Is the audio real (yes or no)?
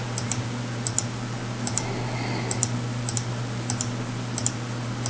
yes